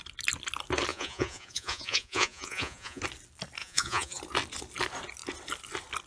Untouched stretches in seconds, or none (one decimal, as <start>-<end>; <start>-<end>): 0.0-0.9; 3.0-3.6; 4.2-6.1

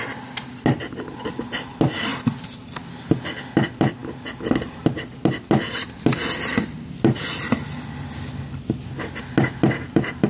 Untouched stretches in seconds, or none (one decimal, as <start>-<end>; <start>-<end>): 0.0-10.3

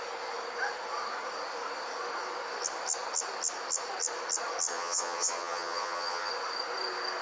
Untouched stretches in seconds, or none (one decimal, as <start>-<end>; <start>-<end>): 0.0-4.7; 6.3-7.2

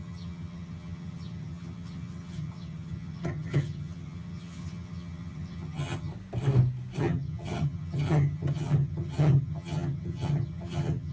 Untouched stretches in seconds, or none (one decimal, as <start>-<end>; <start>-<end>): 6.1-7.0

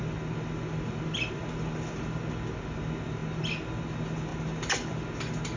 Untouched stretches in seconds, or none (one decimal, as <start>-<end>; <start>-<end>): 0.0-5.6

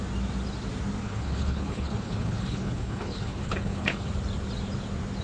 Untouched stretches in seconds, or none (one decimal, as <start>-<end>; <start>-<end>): 0.0-1.0; 4.1-5.2

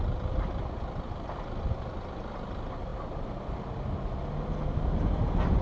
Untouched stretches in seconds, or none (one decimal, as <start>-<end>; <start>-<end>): 0.0-5.6

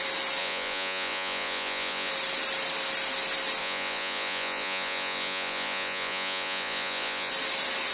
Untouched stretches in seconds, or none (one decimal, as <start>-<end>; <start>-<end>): 0.0-0.4; 2.1-3.6; 7.3-7.9